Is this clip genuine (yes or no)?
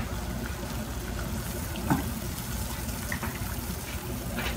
yes